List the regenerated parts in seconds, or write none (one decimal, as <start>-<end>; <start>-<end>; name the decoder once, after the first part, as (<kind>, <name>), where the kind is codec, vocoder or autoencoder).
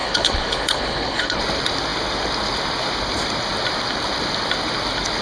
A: 0.0-1.4 (codec, HILCodec)